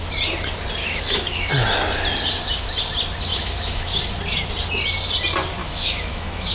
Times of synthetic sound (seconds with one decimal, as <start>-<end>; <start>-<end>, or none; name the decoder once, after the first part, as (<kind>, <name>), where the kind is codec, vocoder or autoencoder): 0.8-1.5 (autoencoder, DAC-VAE); 3.3-4.0; 5.6-6.5